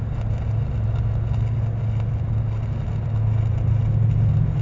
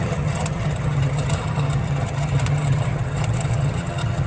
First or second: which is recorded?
first